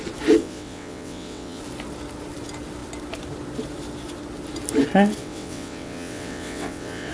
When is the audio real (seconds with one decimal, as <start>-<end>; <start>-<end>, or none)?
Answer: 0.0-0.4; 1.6-5.2